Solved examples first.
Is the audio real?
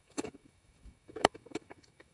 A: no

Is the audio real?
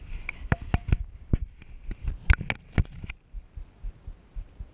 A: yes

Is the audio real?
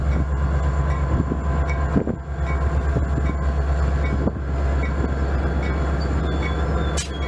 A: yes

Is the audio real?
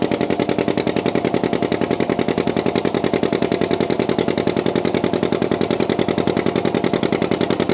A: yes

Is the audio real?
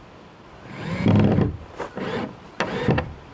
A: yes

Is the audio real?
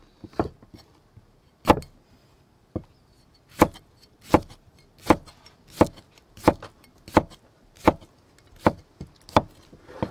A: yes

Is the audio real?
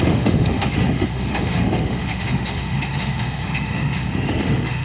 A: no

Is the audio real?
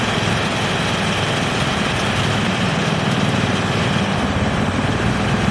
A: yes